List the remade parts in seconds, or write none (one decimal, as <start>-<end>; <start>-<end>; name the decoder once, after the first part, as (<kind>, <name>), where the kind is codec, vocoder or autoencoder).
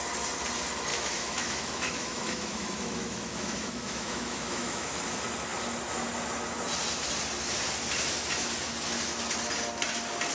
0.9-5.0 (autoencoder, DAC-VAE)